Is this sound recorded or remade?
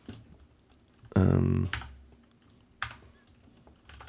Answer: recorded